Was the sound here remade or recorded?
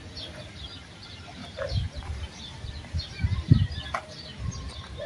remade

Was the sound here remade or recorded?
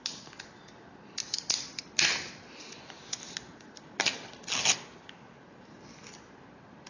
recorded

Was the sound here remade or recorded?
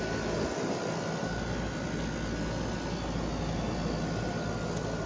recorded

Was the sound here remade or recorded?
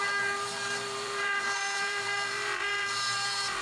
remade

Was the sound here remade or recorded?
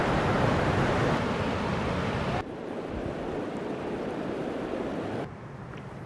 remade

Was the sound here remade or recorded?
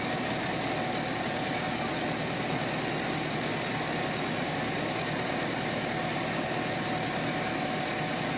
recorded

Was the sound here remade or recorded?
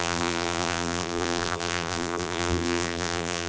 remade